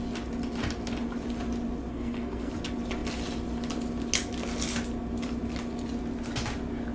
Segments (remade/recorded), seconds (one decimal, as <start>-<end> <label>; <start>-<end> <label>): 0.0-1.9 recorded; 1.9-2.5 remade; 2.5-6.9 recorded